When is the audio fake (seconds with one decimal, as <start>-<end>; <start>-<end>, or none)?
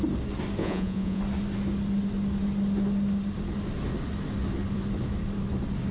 0.6-1.2